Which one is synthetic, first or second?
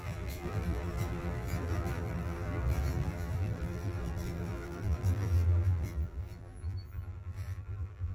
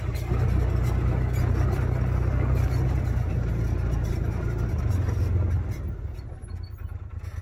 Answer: first